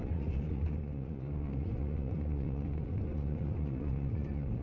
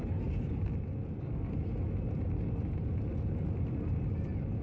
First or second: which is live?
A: second